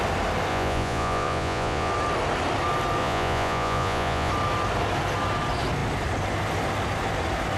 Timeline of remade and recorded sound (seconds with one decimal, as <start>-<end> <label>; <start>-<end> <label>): 0.0-0.5 recorded; 0.5-1.9 remade; 1.9-3.0 recorded; 3.0-4.3 remade; 4.3-7.6 recorded